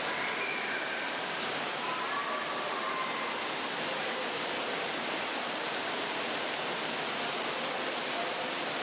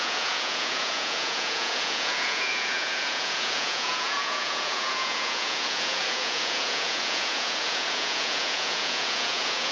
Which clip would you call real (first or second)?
first